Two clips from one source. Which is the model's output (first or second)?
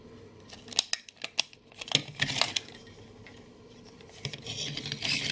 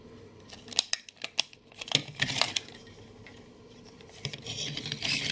second